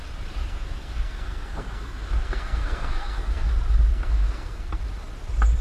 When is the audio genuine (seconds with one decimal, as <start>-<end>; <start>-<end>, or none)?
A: 0.0-0.4; 3.5-3.9; 4.8-5.6